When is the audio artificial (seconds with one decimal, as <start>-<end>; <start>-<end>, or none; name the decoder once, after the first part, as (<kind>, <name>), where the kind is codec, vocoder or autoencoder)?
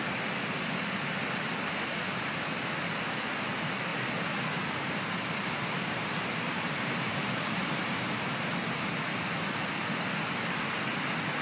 3.9-8.9 (vocoder, BigVGAN v2)